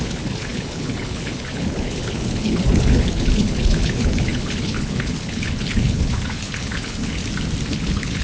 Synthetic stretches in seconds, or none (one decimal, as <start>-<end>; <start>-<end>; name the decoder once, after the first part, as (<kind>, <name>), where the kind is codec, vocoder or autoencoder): 0.0-7.2 (codec, HILCodec); 7.7-8.2